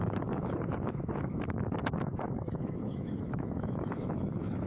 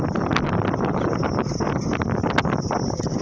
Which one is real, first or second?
second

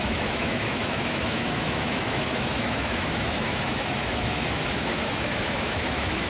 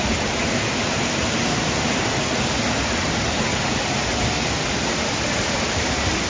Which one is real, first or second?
second